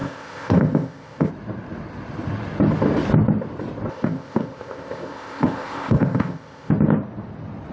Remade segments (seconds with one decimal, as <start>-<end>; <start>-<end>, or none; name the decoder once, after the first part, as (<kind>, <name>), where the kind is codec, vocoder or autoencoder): 0.0-1.3 (codec, ZipCodec); 3.9-6.7